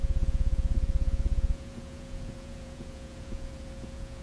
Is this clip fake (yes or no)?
yes